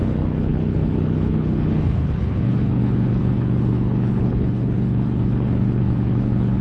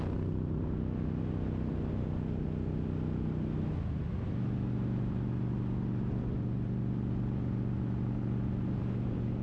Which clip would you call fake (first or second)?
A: first